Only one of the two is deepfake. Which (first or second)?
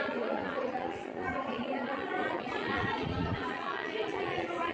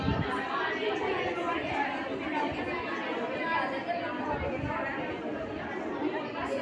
first